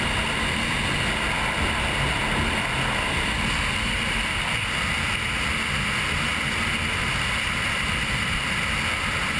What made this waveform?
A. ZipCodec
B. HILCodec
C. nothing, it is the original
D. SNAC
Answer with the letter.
C